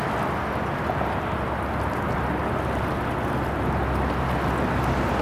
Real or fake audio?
real